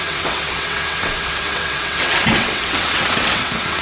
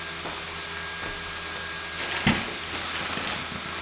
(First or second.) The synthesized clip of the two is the first